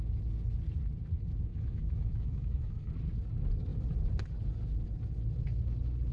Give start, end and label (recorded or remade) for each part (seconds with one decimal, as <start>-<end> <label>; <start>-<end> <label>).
0.0-1.5 recorded; 1.5-2.9 remade; 2.9-6.1 recorded